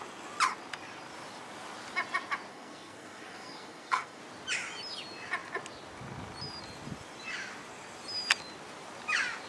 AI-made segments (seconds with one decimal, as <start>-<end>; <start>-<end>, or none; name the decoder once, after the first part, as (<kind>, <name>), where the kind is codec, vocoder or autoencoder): 2.5-4.2 (codec, SNAC)